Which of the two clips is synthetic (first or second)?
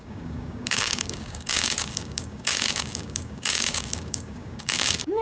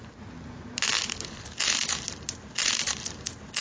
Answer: first